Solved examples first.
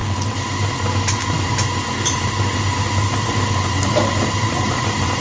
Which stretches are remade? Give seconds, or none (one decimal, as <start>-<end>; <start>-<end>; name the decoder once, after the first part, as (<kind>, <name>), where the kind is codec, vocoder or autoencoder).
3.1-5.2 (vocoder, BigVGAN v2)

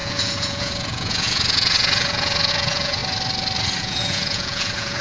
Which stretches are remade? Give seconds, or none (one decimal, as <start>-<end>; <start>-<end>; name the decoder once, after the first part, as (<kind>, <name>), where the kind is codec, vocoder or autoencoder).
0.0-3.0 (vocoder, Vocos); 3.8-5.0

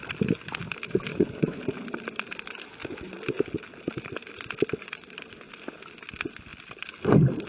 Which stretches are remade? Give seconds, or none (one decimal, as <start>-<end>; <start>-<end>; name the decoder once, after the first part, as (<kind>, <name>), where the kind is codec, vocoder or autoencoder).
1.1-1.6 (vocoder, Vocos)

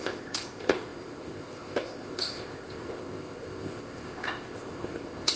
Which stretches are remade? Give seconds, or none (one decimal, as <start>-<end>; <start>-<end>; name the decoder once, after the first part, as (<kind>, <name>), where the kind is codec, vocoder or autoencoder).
0.0-5.4 (codec, ZipCodec)

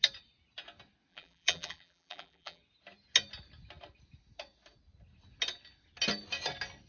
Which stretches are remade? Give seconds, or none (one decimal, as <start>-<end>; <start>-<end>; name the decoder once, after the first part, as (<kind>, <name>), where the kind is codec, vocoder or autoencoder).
1.1-2.6 (vocoder, BigVGAN v2)

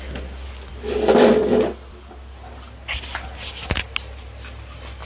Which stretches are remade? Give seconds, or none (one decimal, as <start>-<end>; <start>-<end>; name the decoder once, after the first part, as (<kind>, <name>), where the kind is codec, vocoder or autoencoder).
none

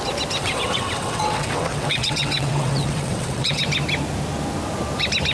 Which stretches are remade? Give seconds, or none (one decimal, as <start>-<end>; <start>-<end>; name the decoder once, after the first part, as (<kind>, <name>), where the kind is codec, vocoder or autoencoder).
0.4-3.6 (vocoder, WaveNeXt)